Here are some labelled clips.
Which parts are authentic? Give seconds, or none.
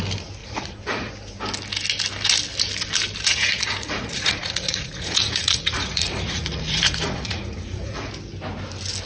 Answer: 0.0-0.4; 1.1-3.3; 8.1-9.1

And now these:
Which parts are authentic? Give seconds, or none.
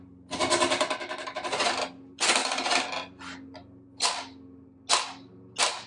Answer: 0.0-5.9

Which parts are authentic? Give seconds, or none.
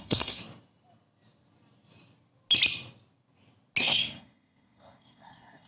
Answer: 0.4-3.8